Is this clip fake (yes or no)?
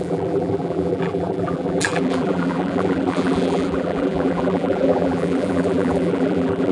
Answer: yes